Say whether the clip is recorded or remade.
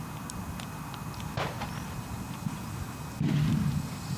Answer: recorded